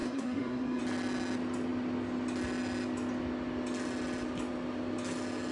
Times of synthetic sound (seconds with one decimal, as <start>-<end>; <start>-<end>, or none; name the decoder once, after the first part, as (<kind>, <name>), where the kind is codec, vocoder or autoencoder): 0.0-0.8 (codec, SNAC)